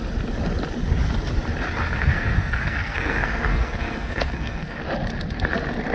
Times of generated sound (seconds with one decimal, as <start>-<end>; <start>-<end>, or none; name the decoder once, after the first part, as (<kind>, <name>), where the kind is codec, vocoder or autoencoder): 2.1-4.8 (codec, SNAC)